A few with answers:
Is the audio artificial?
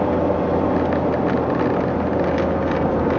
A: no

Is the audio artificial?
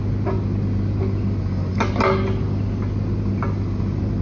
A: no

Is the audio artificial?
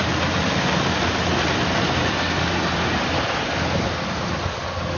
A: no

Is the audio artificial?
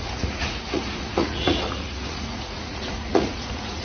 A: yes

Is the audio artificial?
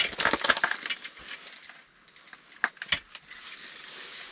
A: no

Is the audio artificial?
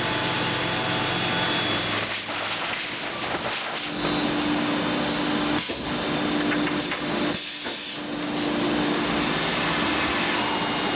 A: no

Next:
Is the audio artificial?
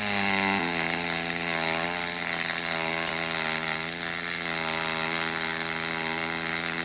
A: no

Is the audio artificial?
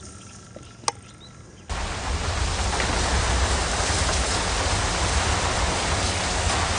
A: no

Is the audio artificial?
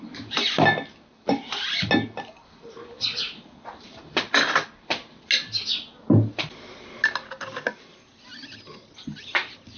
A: no